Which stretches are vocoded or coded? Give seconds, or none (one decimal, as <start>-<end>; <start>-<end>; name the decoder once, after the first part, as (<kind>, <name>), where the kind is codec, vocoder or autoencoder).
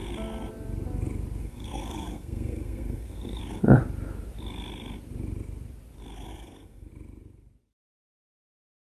1.4-3.4 (codec, SNAC); 6.3-6.9